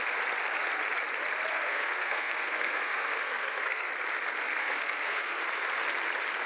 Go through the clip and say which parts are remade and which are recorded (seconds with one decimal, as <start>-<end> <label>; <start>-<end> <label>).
0.0-1.5 recorded; 1.5-3.9 remade; 3.9-4.6 recorded; 4.6-5.4 remade; 5.4-6.5 recorded